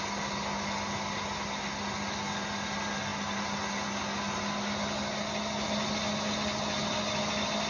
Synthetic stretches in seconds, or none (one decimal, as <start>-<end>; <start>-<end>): none